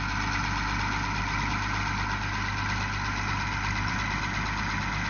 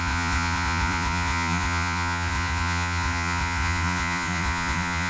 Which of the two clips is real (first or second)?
first